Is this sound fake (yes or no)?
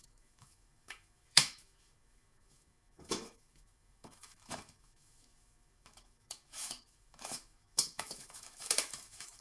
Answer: yes